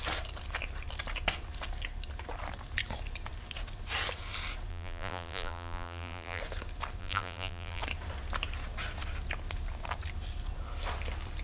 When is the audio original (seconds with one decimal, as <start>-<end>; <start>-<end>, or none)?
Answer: 0.0-4.7; 6.4-7.0; 7.8-11.4